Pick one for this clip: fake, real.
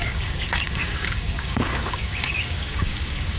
fake